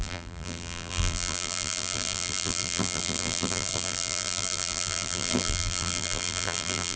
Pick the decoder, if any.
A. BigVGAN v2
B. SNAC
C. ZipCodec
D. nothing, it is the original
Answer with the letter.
A